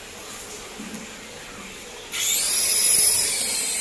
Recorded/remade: recorded